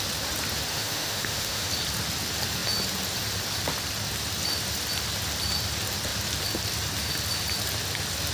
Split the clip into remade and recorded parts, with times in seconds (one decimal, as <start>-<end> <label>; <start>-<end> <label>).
0.0-0.7 recorded; 0.7-1.7 remade; 1.7-8.3 recorded